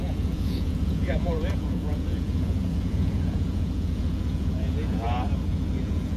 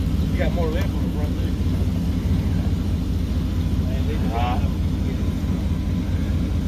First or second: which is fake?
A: first